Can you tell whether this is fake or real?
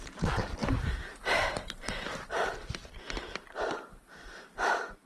fake